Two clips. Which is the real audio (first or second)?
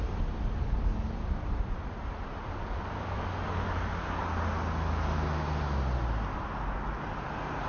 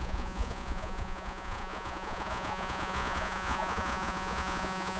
first